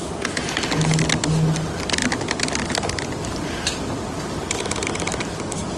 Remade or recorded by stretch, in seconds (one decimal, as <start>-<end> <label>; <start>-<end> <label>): 0.0-5.8 recorded